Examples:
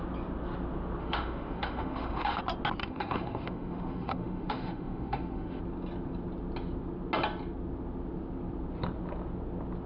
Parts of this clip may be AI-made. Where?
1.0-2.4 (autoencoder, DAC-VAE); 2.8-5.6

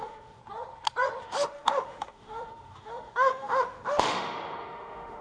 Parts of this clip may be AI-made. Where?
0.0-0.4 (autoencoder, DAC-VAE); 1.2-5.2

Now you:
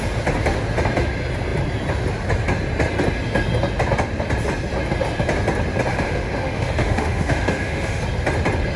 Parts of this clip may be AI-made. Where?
5.9-8.0 (autoencoder, DAC-VAE)

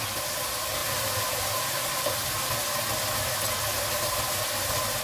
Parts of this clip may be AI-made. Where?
none

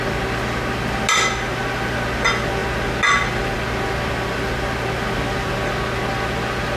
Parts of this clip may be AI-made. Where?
none

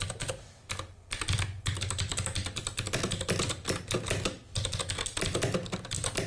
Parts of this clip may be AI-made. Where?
none

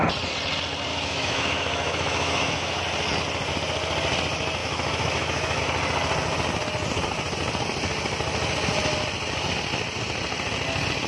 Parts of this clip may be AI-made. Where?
0.9-2.8 (autoencoder, DAC-VAE); 4.6-5.6

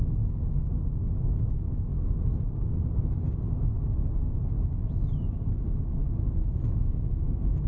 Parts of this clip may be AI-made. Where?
0.0-1.9 (autoencoder, DAC-VAE); 6.5-7.7